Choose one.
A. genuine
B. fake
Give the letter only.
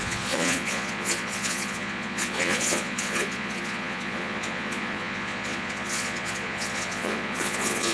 B